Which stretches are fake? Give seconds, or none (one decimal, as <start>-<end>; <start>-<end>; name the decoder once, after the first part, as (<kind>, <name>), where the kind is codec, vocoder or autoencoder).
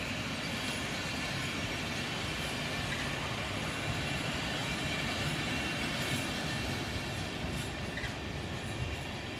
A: none